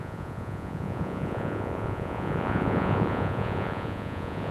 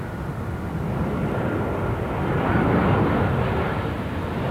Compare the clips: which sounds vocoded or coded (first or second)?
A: first